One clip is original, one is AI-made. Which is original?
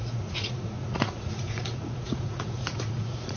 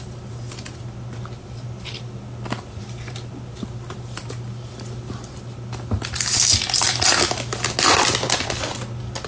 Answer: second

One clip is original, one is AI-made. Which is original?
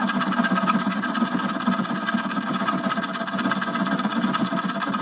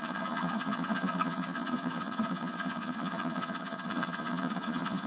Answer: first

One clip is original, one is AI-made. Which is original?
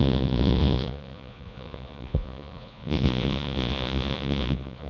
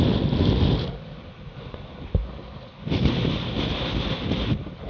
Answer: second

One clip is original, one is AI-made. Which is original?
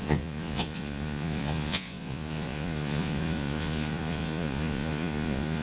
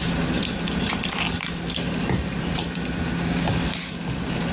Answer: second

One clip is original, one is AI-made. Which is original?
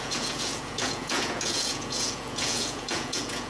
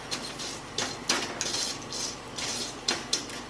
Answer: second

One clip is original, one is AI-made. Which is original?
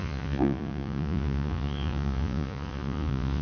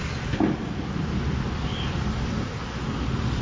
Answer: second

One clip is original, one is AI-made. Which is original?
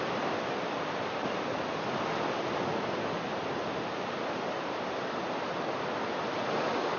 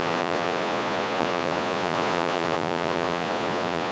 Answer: first